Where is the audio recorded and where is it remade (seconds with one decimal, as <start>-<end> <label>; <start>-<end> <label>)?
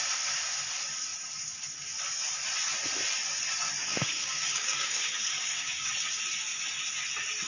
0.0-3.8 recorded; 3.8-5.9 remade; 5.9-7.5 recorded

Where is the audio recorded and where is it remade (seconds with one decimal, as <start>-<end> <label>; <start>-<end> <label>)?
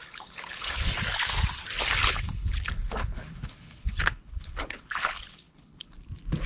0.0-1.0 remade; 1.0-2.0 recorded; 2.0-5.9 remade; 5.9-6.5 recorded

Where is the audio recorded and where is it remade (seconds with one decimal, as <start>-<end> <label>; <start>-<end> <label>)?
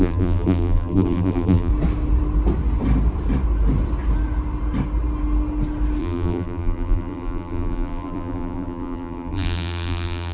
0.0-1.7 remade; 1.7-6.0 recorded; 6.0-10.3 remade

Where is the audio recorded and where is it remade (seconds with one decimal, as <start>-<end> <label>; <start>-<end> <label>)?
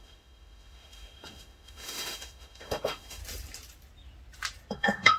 0.0-3.2 remade; 3.2-4.7 recorded; 4.7-5.2 remade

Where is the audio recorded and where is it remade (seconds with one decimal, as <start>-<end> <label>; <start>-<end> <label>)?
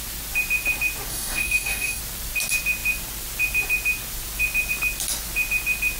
0.0-1.1 recorded; 1.1-2.0 remade; 2.0-6.0 recorded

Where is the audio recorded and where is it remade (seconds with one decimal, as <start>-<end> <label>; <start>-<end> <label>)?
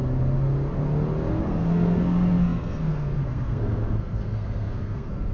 0.0-1.4 recorded; 1.4-5.3 remade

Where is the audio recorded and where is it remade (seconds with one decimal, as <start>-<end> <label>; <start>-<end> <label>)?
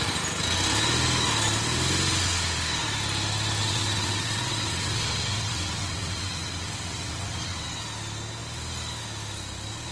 0.0-3.6 recorded; 3.6-7.8 remade; 7.8-9.9 recorded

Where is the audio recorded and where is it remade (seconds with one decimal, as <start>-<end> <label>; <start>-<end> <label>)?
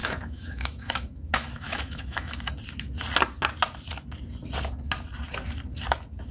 0.0-2.5 remade; 2.5-6.3 recorded